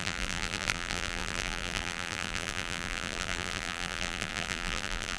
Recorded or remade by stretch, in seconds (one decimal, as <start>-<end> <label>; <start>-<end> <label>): 0.0-5.2 remade